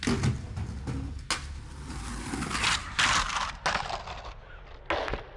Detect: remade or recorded recorded